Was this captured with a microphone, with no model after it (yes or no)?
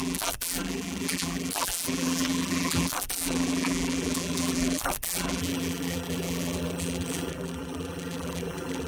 no